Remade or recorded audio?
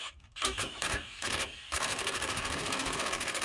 remade